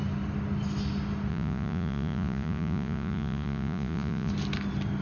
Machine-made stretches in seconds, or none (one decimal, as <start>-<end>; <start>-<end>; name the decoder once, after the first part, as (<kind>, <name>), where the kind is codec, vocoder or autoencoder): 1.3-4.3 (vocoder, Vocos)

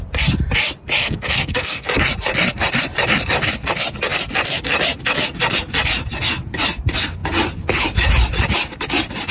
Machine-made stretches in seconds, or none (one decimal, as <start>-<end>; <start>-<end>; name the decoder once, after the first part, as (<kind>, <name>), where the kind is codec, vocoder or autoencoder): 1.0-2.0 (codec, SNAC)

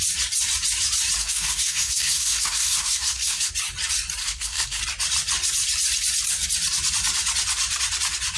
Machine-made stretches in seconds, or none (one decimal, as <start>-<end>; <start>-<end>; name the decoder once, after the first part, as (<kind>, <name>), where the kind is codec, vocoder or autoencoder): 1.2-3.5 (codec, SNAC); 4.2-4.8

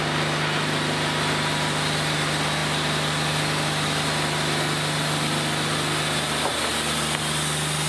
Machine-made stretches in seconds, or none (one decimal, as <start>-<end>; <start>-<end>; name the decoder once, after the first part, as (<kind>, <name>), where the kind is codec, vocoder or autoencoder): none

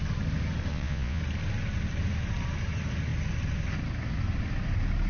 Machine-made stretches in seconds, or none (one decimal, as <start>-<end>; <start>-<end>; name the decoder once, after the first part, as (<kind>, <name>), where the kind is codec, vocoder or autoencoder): 0.7-1.2 (vocoder, Vocos)

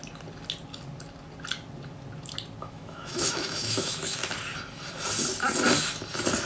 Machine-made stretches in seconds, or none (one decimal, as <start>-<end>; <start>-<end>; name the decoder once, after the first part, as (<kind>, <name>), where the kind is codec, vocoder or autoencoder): 2.6-4.2 (autoencoder, DAC-VAE)

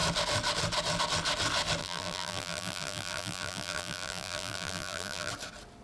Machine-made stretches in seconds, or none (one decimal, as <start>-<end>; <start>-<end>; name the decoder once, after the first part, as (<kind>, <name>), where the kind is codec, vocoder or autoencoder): 1.8-5.3 (vocoder, BigVGAN v2)